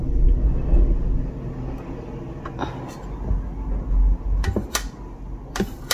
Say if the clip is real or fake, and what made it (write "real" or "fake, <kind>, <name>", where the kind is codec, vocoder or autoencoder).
real